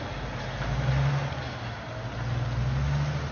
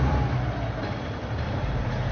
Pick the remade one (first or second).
second